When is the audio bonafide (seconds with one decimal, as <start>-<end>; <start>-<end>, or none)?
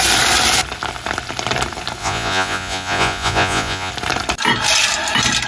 0.0-2.0; 3.9-5.5